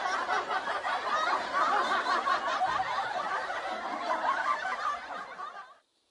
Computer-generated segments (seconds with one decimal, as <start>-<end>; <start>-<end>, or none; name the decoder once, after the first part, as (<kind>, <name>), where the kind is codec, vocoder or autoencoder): none

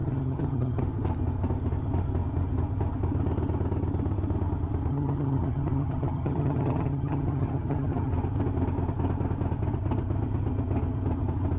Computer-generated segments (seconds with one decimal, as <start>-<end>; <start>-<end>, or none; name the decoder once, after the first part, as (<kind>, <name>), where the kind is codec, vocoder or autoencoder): 0.0-0.8 (vocoder, HiFi-GAN); 4.9-8.1

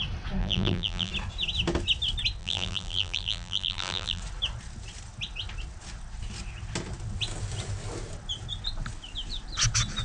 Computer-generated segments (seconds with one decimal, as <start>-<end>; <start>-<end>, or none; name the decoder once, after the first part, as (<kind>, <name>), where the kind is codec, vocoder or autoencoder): 0.4-1.1 (vocoder, BigVGAN v2); 2.4-4.2

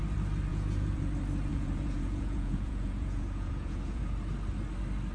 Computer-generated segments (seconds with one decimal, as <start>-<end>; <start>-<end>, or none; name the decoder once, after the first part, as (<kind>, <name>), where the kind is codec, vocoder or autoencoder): 0.5-1.1 (vocoder, Vocos); 1.5-4.0